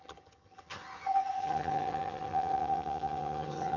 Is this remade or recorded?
remade